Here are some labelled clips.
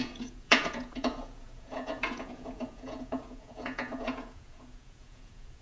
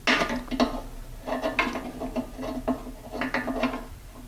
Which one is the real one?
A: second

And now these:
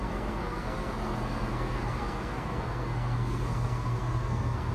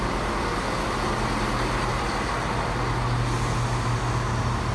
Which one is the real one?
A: second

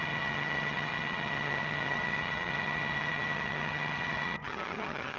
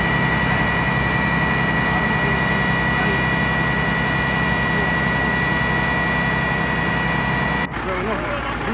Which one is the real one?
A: second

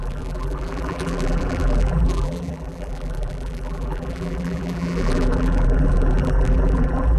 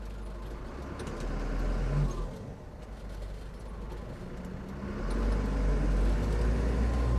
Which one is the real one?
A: second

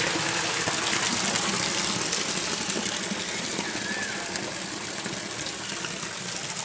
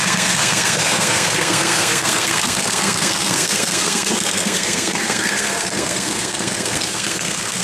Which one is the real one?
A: first